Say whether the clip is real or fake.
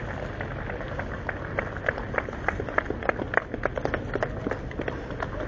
real